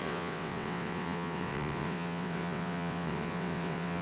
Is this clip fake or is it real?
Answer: fake